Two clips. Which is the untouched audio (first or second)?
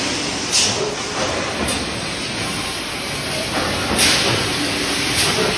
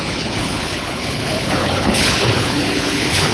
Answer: first